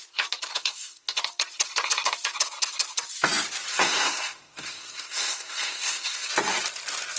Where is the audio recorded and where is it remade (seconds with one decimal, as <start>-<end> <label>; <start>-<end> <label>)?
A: 0.0-0.5 recorded; 0.5-1.2 remade; 1.2-3.7 recorded; 3.7-6.3 remade; 6.3-7.2 recorded